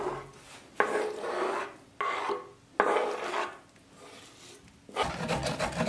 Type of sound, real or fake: real